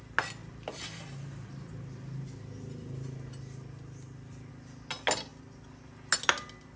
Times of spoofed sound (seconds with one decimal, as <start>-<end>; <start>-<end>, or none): none